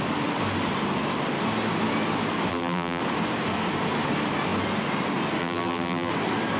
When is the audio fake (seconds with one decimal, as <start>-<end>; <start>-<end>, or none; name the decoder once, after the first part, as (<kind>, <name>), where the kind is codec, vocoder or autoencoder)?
2.5-3.0 (vocoder, BigVGAN v2); 5.4-6.1